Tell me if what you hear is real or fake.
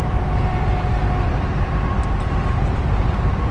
fake